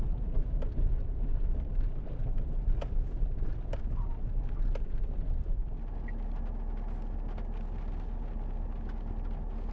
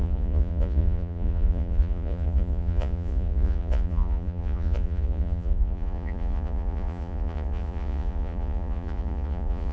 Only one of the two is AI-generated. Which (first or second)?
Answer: second